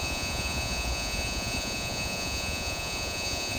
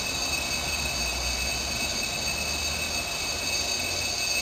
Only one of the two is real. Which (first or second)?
second